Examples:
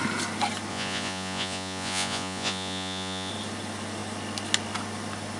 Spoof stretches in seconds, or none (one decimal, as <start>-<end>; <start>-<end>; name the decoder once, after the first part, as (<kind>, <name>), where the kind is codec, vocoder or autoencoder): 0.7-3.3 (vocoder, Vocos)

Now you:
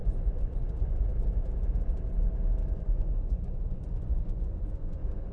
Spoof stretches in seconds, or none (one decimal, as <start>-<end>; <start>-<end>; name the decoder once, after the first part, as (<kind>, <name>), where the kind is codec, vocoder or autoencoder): 0.0-1.1 (vocoder, Vocos); 2.7-5.3

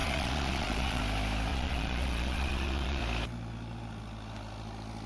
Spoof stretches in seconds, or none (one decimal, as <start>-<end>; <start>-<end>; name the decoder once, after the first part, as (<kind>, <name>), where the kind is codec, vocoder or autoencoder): 0.0-1.0 (vocoder, Vocos); 1.5-3.0